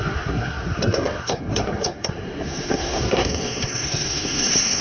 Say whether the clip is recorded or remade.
remade